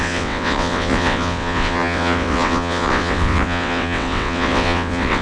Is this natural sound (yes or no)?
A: no